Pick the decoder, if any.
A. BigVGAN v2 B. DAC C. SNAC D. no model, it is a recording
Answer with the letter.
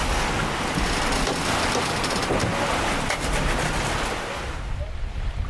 D